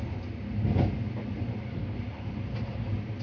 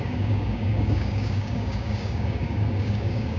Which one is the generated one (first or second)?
second